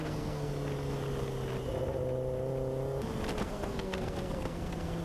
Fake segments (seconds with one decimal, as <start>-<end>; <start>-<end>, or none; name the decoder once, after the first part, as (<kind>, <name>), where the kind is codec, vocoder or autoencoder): 0.0-0.5 (codec, SNAC); 3.4-5.0